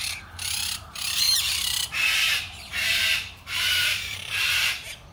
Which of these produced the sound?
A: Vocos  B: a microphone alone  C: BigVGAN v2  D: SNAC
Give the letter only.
C